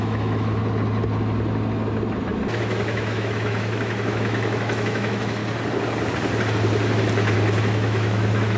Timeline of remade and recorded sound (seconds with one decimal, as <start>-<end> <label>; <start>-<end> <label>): 0.0-0.6 remade; 0.6-2.6 recorded; 2.6-5.4 remade; 5.4-7.6 recorded; 7.6-8.6 remade